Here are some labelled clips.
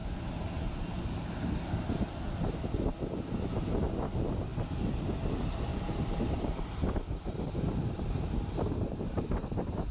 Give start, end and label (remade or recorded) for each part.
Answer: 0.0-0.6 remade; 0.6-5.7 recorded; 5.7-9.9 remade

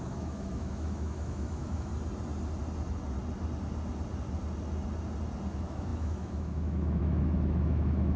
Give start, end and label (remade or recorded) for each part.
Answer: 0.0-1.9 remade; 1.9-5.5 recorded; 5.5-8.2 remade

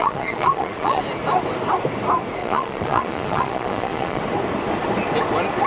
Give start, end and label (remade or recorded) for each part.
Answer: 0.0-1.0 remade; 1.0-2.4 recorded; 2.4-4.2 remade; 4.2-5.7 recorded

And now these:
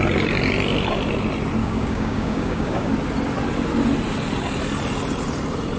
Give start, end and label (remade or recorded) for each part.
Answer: 0.0-1.6 recorded; 1.6-2.9 remade; 2.9-5.8 recorded